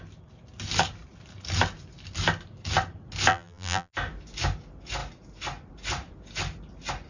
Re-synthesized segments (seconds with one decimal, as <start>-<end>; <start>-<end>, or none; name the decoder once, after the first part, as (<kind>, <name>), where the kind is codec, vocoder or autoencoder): 3.3-3.9 (vocoder, BigVGAN v2)